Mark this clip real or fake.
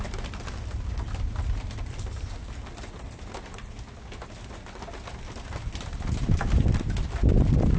real